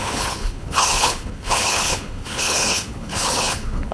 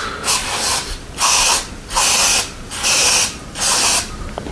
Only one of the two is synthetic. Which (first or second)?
first